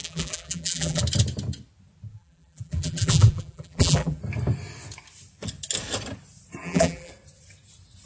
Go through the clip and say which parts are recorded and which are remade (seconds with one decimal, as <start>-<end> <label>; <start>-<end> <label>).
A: 0.0-1.0 remade; 1.0-2.1 recorded; 2.1-4.2 remade; 4.2-6.6 recorded; 6.6-7.1 remade; 7.1-8.1 recorded